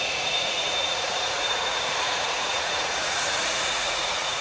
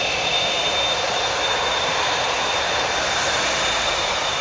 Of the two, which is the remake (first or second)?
first